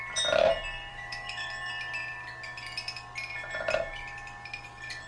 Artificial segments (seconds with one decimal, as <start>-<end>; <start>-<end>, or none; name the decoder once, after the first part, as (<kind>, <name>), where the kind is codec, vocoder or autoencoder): 0.9-1.5 (autoencoder, DAC-VAE)